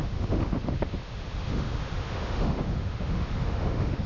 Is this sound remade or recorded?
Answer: remade